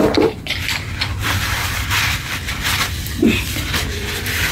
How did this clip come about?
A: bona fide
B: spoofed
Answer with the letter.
B